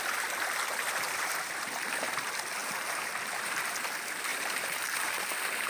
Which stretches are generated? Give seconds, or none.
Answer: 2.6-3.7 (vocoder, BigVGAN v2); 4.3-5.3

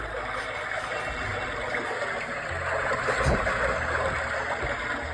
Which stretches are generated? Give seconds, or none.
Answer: none

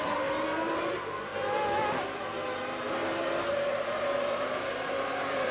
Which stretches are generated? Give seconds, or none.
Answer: 0.0-1.3 (vocoder, BigVGAN v2); 2.2-3.0; 3.5-5.5

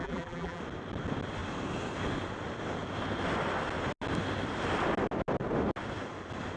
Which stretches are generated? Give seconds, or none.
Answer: 0.0-0.6 (vocoder, BigVGAN v2)